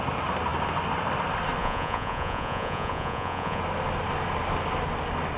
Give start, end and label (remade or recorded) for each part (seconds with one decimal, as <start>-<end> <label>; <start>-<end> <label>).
0.0-1.6 recorded; 1.6-3.6 remade; 3.6-5.4 recorded